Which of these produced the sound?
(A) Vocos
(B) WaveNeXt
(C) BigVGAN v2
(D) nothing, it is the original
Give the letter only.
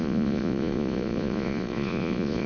A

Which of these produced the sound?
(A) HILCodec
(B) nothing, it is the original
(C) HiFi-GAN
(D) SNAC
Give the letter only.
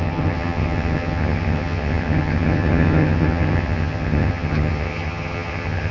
C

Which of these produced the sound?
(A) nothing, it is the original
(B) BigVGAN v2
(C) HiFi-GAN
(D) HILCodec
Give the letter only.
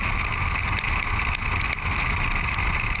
A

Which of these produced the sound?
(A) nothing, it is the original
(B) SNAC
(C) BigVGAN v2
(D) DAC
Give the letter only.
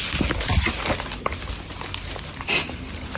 A